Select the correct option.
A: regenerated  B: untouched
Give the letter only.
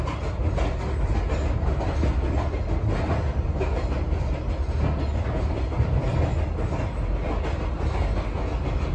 B